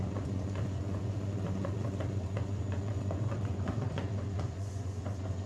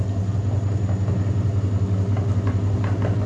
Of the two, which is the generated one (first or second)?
first